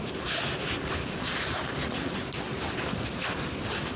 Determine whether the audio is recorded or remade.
recorded